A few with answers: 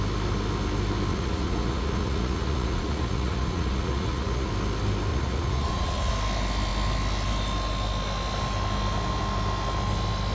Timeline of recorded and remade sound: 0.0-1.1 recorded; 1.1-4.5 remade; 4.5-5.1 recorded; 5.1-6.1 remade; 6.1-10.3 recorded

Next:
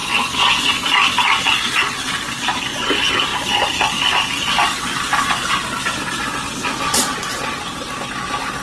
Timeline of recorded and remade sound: 0.0-0.7 remade; 0.7-8.6 recorded

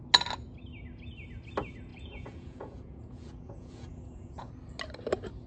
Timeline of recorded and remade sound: 0.0-1.9 recorded; 1.9-4.5 remade; 4.5-5.5 recorded

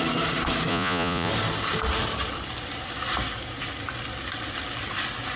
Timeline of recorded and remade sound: 0.0-0.7 recorded; 0.7-1.3 remade; 1.3-5.4 recorded

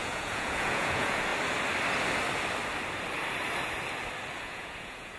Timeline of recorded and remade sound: 0.0-1.3 remade; 1.3-4.4 recorded; 4.4-5.2 remade

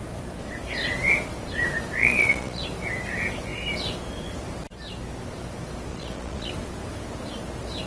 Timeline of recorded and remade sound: 0.0-2.0 recorded; 2.0-2.6 remade; 2.6-5.9 recorded; 5.9-6.5 remade; 6.5-7.9 recorded